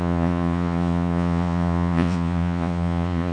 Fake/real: fake